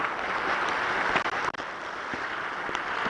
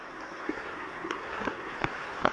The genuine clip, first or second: first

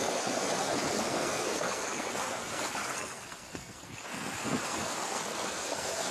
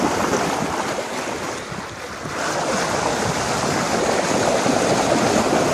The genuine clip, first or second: second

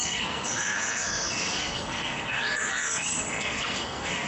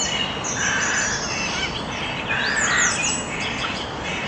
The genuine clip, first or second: second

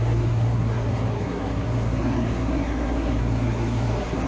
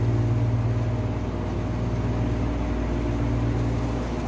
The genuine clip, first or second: second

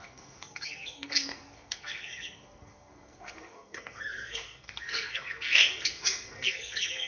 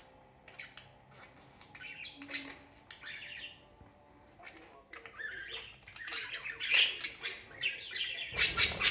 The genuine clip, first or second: second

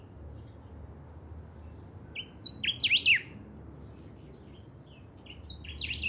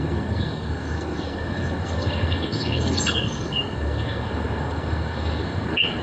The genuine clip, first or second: first